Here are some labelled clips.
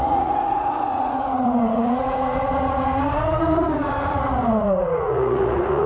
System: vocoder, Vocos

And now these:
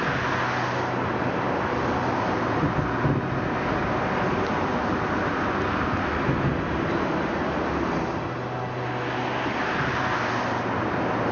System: none